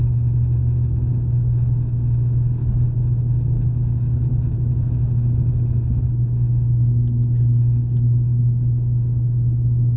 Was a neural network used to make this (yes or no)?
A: no